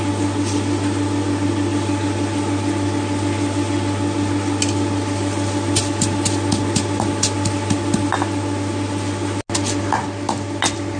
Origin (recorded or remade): recorded